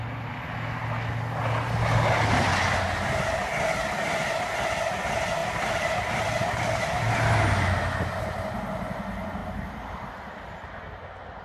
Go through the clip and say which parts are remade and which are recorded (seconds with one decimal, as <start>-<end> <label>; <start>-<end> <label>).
0.0-5.4 recorded; 5.4-6.5 remade; 6.5-11.4 recorded